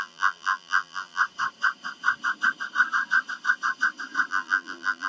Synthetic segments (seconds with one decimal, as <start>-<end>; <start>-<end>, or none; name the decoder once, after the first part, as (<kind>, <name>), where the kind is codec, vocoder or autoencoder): 0.0-1.2 (vocoder, BigVGAN v2); 4.3-5.1